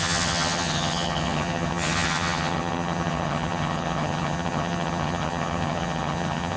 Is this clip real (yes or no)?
no